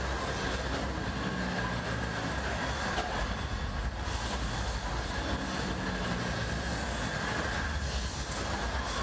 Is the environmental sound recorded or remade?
recorded